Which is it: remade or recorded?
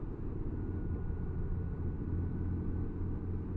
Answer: recorded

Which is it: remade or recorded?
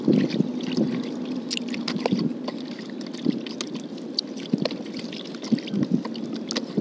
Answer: recorded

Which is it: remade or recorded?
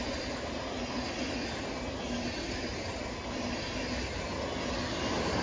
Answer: recorded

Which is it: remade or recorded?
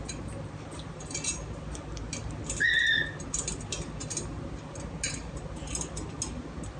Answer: recorded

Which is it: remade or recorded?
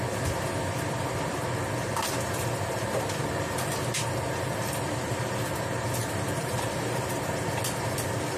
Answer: remade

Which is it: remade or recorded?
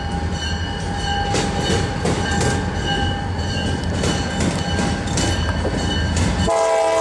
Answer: recorded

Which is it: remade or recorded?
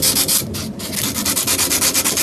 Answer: recorded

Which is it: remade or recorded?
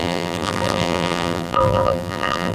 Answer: remade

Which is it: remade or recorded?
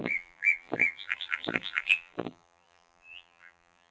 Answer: remade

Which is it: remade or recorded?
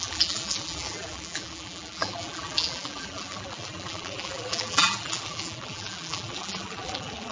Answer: remade